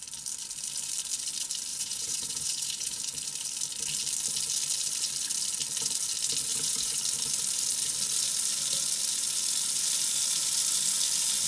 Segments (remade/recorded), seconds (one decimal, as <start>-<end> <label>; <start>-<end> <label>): 0.0-1.7 recorded; 1.7-3.0 remade; 3.0-6.5 recorded; 6.5-7.0 remade; 7.0-11.5 recorded